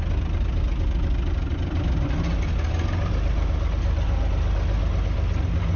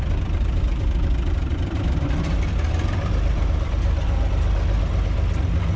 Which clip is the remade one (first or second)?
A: second